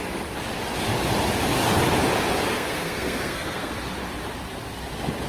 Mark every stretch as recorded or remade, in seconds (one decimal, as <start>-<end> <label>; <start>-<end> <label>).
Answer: 0.0-2.5 recorded; 2.5-3.7 remade; 3.7-5.3 recorded